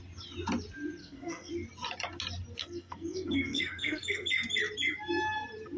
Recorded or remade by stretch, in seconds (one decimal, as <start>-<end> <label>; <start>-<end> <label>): 0.0-1.0 recorded; 1.0-1.5 remade; 1.5-2.6 recorded; 2.6-4.3 remade; 4.3-5.8 recorded